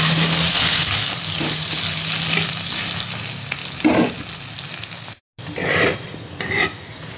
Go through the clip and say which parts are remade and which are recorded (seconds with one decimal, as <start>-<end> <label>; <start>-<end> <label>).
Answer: 0.0-0.5 recorded; 0.5-1.1 remade; 1.1-7.2 recorded